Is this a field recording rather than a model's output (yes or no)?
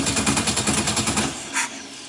yes